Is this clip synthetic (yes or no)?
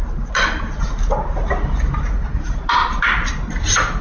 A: no